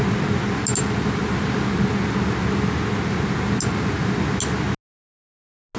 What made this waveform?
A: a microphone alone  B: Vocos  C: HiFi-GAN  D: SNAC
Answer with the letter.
A